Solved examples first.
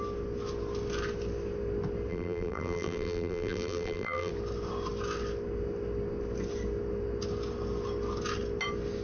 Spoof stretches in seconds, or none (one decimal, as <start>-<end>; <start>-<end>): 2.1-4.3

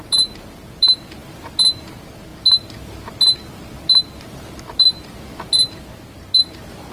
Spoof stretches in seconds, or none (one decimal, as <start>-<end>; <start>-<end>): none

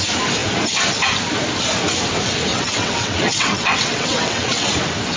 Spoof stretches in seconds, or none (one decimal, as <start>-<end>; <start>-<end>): 2.5-4.7